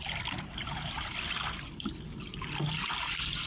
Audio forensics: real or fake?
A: real